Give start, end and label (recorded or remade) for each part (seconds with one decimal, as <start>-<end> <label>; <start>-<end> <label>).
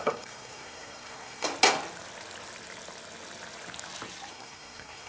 0.0-1.5 remade; 1.5-4.3 recorded; 4.3-5.1 remade